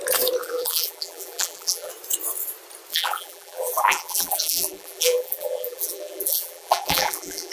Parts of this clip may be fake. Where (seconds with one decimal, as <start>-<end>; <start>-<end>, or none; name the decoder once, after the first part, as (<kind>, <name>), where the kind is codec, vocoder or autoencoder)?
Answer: 0.4-1.9 (vocoder, BigVGAN v2); 2.9-7.5